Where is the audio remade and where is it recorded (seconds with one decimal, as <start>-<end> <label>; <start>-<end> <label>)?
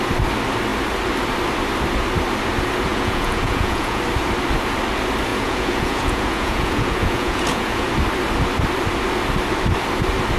0.0-2.9 recorded; 2.9-4.0 remade; 4.0-5.3 recorded; 5.3-7.9 remade; 7.9-10.4 recorded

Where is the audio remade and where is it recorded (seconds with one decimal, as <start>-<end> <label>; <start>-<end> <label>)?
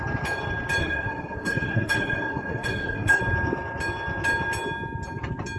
0.0-0.8 recorded; 0.8-3.2 remade; 3.2-5.6 recorded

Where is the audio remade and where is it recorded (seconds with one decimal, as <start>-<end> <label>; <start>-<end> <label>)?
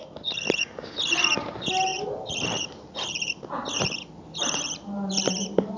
0.0-5.8 recorded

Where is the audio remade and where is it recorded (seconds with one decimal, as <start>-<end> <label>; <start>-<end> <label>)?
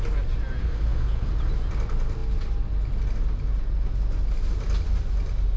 0.0-0.6 recorded; 0.6-1.3 remade; 1.3-5.6 recorded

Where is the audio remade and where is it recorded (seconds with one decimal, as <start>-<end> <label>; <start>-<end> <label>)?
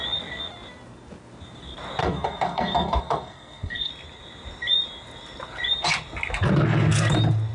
0.0-2.0 recorded; 2.0-3.9 remade; 3.9-7.5 recorded